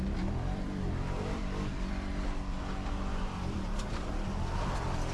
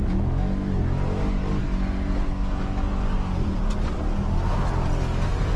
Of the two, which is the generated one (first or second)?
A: first